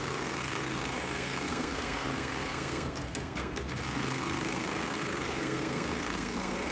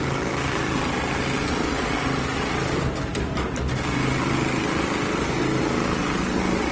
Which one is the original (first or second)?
second